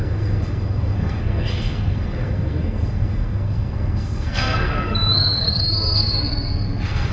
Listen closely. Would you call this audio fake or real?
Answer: fake